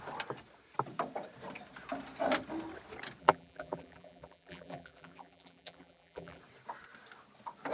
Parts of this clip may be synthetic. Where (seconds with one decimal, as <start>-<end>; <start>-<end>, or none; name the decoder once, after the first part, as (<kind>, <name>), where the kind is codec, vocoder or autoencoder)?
3.2-6.4 (vocoder, BigVGAN v2)